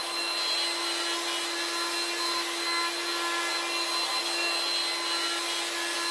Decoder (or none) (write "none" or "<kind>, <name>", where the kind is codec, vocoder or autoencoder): none